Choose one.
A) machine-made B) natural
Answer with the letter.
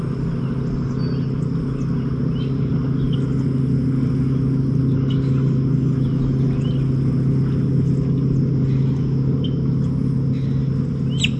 B